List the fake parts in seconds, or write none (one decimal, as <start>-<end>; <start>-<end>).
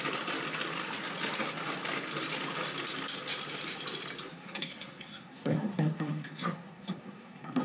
4.3-7.6